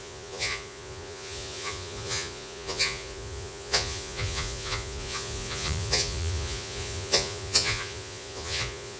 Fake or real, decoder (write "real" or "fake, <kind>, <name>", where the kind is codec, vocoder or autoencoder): fake, vocoder, Vocos